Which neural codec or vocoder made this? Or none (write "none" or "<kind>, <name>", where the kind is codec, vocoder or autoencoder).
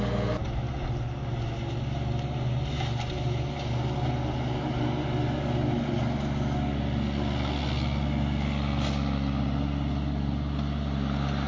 none